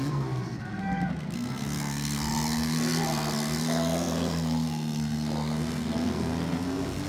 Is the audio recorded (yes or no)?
no